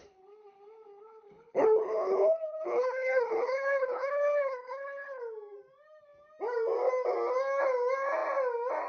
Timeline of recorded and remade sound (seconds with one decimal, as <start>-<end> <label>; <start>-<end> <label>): 0.0-5.2 remade; 5.2-8.9 recorded